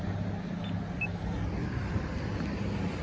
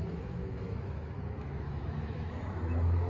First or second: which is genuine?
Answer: first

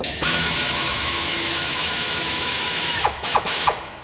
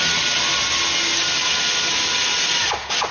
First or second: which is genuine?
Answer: second